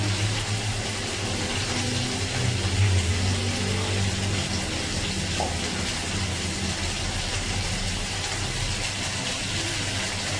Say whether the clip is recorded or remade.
recorded